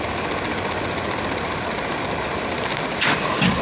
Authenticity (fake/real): real